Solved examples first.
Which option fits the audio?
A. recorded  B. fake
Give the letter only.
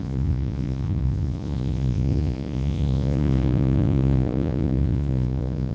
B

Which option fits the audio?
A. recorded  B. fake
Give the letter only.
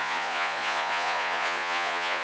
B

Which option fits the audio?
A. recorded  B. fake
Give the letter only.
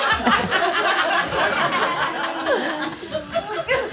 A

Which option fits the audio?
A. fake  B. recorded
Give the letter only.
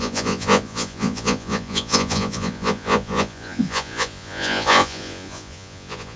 A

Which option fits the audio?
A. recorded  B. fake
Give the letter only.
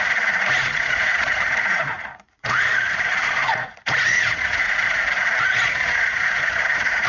B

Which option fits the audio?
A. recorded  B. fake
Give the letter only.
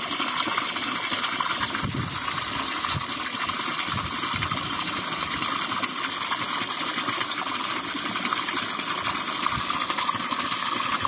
A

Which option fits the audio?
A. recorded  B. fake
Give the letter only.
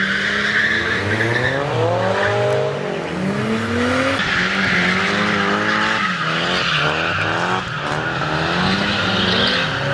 A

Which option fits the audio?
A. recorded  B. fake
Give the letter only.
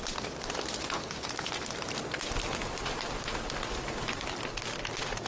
A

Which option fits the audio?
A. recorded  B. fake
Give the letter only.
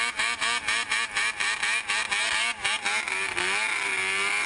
A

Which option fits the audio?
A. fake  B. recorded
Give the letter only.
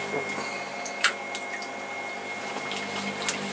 B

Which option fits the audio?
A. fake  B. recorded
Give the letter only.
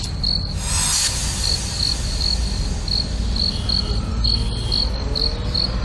B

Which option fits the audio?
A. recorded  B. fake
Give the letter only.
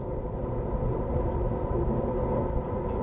A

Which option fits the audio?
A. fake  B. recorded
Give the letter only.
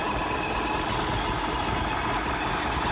B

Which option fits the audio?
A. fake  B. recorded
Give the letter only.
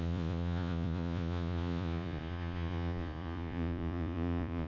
A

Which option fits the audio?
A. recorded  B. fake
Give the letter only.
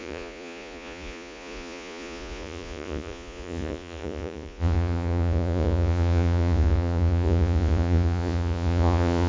B